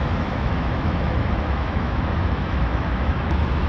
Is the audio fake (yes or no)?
yes